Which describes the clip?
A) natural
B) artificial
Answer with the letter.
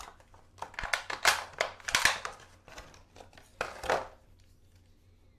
A